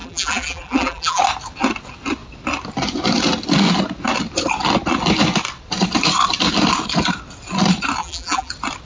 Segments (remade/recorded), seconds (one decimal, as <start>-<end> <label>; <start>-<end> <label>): 0.0-1.2 remade; 1.2-8.0 recorded; 8.0-8.5 remade; 8.5-8.9 recorded